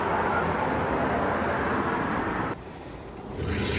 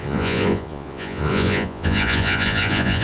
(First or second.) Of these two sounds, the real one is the first